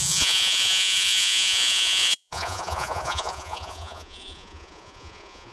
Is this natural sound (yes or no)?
no